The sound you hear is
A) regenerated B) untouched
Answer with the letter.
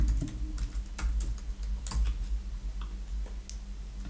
B